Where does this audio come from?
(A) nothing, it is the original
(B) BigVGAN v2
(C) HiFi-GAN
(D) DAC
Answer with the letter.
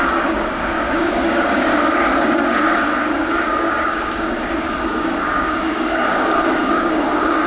D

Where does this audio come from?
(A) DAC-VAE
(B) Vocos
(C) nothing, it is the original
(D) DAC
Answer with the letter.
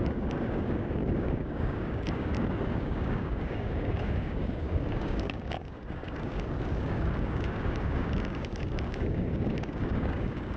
D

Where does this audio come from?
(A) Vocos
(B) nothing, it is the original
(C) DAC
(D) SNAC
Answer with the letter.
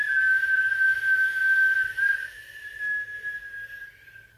B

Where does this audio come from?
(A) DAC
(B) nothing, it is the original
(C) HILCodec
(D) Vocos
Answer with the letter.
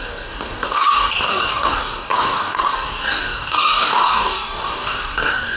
A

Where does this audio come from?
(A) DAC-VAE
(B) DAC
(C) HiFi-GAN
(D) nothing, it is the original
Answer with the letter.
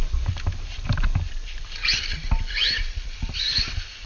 D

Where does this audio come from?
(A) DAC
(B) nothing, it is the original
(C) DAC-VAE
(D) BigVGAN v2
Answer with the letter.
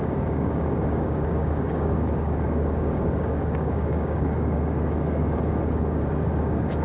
A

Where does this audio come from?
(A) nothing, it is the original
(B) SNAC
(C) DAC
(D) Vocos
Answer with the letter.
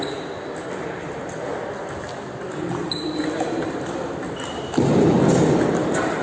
A